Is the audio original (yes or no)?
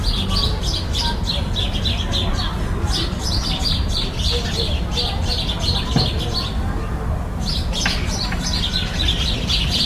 yes